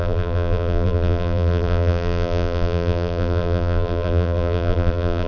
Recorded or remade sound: remade